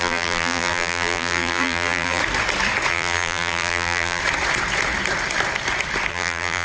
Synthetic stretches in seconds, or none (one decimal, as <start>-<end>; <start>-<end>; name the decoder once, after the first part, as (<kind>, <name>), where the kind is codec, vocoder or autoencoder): 0.0-2.2 (vocoder, BigVGAN v2); 2.9-4.2; 6.1-6.6